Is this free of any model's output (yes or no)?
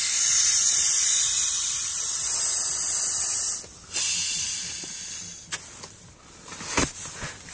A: yes